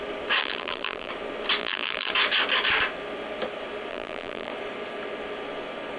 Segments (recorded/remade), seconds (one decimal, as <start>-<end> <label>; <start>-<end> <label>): 0.0-0.4 recorded; 0.4-1.1 remade; 1.1-1.6 recorded; 1.6-2.1 remade; 2.1-3.9 recorded; 3.9-4.5 remade; 4.5-6.0 recorded